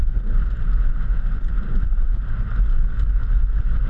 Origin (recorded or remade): recorded